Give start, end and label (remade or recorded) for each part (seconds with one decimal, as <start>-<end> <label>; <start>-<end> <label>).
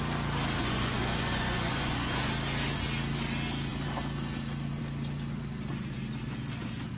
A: 0.0-0.6 recorded; 0.6-2.3 remade; 2.3-7.0 recorded